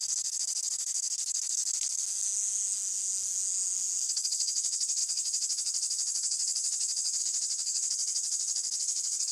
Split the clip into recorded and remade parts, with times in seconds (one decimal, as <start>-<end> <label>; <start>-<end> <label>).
0.0-9.3 remade

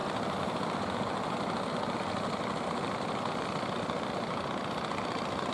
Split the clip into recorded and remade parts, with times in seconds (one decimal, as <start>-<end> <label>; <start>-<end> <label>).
0.0-5.5 recorded

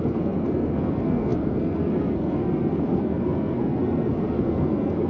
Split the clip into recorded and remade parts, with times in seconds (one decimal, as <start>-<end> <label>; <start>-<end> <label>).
0.0-5.1 remade

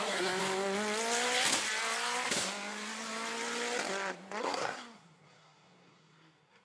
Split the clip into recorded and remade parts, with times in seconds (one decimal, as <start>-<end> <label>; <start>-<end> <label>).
0.0-0.4 remade; 0.4-4.4 recorded; 4.4-6.6 remade

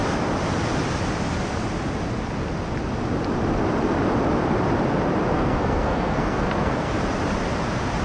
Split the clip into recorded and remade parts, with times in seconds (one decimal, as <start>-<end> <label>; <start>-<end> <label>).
0.0-5.3 recorded; 5.3-7.0 remade; 7.0-8.0 recorded